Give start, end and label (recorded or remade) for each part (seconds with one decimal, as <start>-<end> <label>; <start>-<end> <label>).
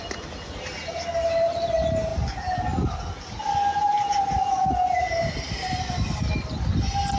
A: 0.0-7.2 recorded